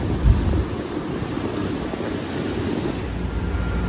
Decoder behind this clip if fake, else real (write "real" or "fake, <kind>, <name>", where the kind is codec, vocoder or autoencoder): real